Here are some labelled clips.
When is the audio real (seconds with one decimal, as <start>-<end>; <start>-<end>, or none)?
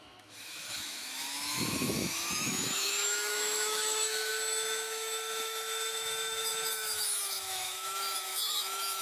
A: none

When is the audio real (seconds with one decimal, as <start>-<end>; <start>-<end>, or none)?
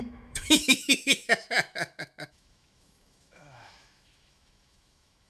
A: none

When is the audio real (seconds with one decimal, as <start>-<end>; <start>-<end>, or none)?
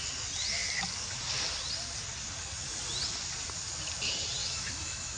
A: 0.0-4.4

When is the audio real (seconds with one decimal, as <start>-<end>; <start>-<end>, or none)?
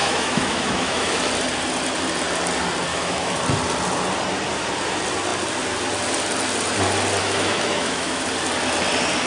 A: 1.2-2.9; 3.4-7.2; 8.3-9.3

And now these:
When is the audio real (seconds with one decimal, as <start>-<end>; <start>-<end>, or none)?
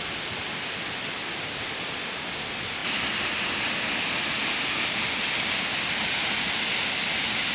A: 0.0-7.5